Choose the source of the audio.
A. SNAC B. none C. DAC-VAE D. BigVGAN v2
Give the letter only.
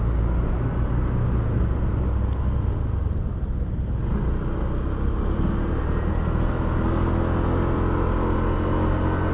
B